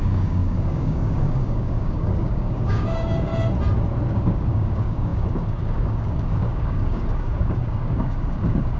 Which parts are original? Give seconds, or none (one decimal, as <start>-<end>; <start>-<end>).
3.3-4.1